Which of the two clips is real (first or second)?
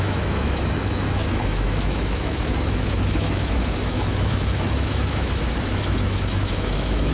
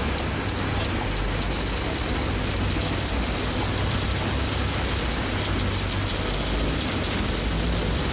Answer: second